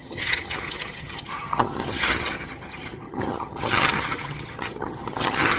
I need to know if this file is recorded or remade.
remade